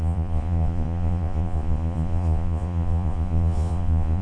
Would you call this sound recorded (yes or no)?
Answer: no